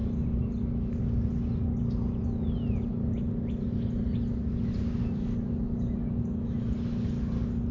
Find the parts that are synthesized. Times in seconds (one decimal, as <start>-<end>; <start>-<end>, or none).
none